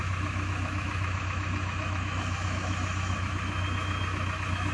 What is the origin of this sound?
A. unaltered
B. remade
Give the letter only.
B